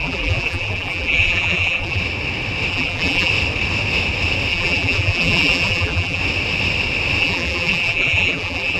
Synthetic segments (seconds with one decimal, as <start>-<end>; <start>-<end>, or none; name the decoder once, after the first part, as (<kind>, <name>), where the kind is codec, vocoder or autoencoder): 0.0-2.0 (vocoder, BigVGAN v2); 2.7-3.3; 4.5-6.2; 7.2-8.8